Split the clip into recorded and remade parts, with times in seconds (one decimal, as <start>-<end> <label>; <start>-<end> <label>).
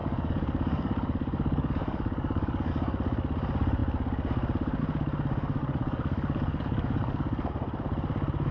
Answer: 0.0-2.7 remade; 2.7-5.6 recorded; 5.6-7.5 remade; 7.5-8.5 recorded